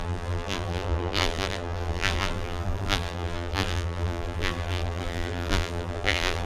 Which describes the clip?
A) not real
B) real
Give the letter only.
A